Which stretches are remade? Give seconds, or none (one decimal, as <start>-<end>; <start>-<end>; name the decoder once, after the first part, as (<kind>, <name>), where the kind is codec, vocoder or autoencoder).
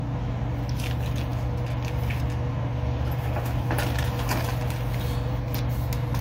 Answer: none